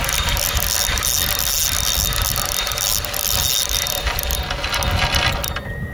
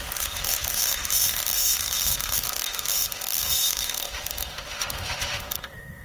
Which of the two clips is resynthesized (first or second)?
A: second